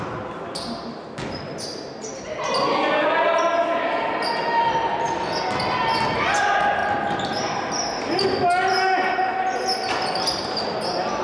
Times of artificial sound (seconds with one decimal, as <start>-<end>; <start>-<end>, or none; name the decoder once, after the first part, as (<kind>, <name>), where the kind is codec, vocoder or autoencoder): none